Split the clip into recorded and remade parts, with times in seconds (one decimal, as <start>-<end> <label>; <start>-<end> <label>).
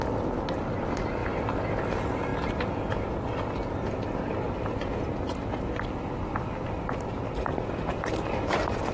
0.0-8.9 recorded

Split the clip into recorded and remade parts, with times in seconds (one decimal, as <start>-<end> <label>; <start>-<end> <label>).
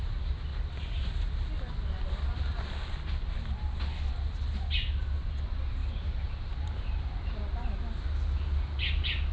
0.0-0.5 recorded; 0.5-1.3 remade; 1.3-5.8 recorded; 5.8-7.1 remade; 7.1-9.3 recorded